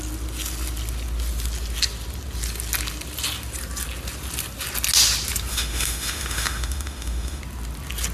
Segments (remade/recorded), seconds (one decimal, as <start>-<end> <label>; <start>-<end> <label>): 0.0-5.5 recorded; 5.5-7.4 remade; 7.4-8.1 recorded